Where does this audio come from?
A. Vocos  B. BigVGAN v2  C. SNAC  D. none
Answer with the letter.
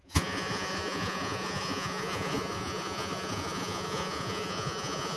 A